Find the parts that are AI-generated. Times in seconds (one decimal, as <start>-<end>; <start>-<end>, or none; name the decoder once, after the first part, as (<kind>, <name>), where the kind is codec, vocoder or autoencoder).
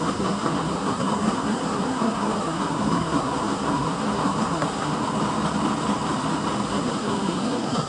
0.0-4.9 (codec, SNAC); 6.7-7.9